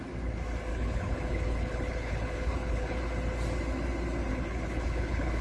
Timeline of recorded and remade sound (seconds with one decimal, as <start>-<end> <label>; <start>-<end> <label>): 0.0-0.7 recorded; 0.7-3.0 remade; 3.0-4.3 recorded; 4.3-5.4 remade